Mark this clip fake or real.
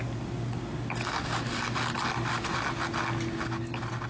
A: real